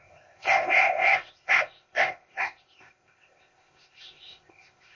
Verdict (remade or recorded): remade